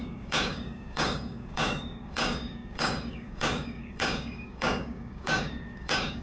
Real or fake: fake